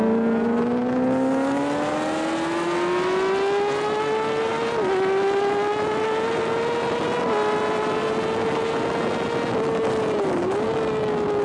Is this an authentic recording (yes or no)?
yes